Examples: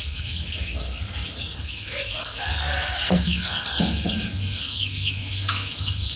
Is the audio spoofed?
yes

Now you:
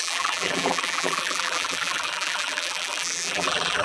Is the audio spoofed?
yes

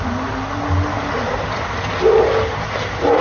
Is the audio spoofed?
no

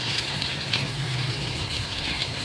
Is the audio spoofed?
yes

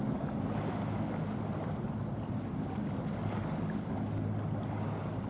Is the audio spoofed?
no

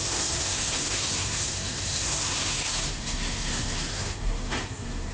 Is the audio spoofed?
yes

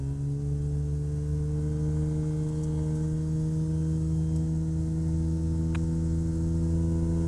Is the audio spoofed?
no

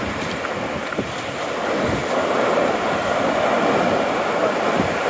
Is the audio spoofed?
no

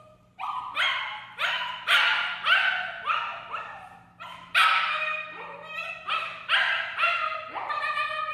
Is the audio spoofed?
yes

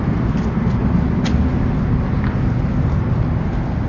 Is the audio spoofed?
no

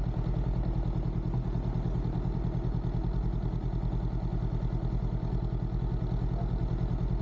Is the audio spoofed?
no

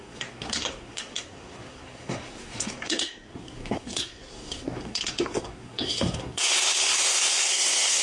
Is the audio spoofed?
yes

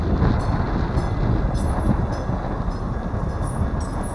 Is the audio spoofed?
no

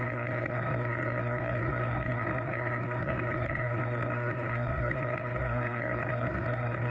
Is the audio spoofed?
yes